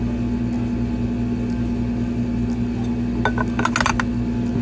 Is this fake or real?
real